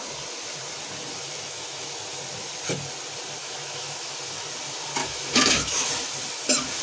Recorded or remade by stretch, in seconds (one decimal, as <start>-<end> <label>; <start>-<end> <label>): 0.0-1.2 recorded; 1.2-2.0 remade; 2.0-3.4 recorded; 3.4-4.1 remade; 4.1-5.0 recorded; 5.0-5.9 remade; 5.9-6.8 recorded